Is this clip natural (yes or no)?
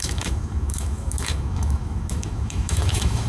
no